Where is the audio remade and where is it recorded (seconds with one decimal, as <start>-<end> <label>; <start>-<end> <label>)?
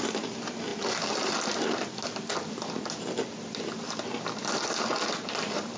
0.0-5.8 recorded